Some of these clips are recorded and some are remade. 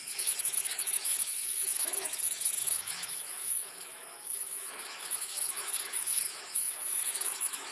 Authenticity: remade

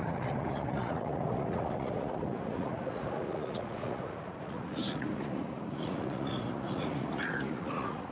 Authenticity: remade